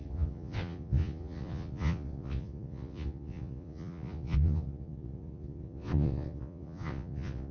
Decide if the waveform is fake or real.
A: fake